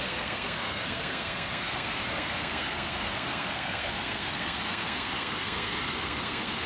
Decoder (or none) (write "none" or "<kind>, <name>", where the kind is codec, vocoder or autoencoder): codec, SNAC